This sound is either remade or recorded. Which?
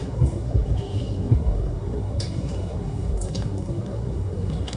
remade